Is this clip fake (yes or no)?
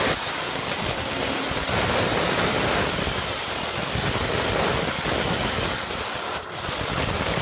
no